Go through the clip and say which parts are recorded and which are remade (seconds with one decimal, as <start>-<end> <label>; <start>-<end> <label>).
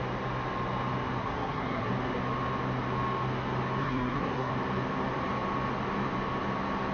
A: 0.0-1.2 recorded; 1.2-1.9 remade; 1.9-3.8 recorded; 3.8-4.5 remade; 4.5-6.9 recorded